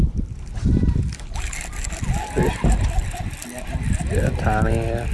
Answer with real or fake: real